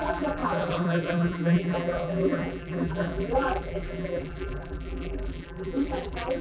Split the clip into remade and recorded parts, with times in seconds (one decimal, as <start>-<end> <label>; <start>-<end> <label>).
0.0-6.4 remade